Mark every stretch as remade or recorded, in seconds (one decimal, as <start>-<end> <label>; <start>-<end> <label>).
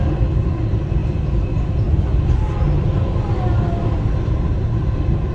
0.0-5.3 recorded